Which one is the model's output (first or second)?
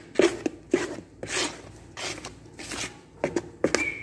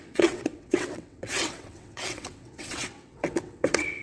second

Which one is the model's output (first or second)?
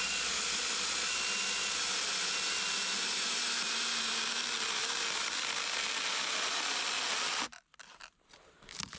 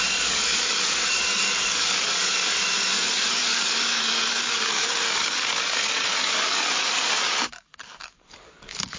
second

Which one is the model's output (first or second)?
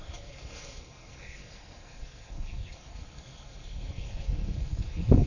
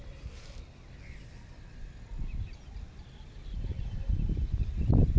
first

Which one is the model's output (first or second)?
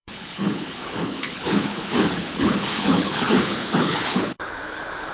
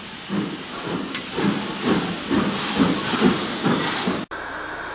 first